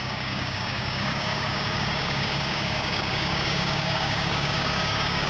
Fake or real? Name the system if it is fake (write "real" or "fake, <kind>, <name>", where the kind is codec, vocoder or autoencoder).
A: fake, codec, DAC